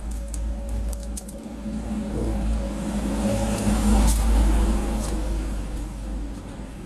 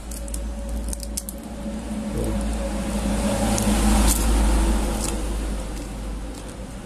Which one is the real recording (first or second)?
second